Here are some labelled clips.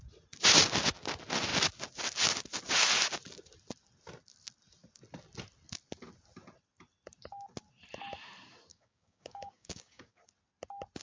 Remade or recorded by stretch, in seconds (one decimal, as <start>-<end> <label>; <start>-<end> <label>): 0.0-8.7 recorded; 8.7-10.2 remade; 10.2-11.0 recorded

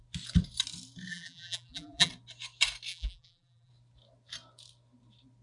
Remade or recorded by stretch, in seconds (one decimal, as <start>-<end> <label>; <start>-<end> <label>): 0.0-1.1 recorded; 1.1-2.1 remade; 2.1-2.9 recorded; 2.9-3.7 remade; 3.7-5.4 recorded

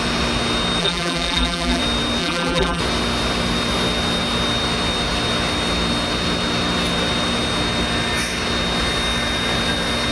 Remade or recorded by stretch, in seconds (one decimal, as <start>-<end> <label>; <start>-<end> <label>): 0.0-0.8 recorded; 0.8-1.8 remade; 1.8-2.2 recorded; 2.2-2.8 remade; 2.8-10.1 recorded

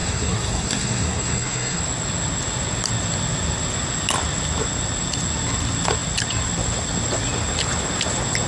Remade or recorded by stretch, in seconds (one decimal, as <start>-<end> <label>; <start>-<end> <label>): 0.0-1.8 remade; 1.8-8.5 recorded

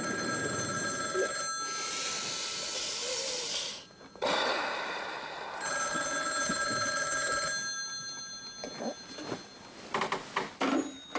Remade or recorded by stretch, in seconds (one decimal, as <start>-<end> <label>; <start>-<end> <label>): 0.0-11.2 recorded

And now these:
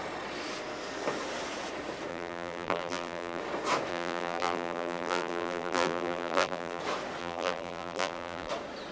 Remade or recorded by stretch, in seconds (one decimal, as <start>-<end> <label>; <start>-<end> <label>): 0.0-2.1 recorded; 2.1-3.4 remade; 3.4-3.9 recorded; 3.9-6.8 remade; 6.8-7.2 recorded; 7.2-8.5 remade; 8.5-8.9 recorded

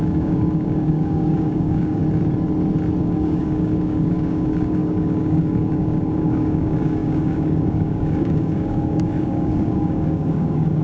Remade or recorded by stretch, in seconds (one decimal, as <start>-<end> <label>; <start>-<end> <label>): 0.0-2.0 remade; 2.0-3.0 recorded; 3.0-10.8 remade

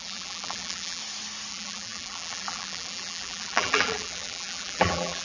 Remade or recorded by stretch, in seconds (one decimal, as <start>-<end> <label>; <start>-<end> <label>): 0.0-1.0 remade; 1.0-1.5 recorded; 1.5-5.2 remade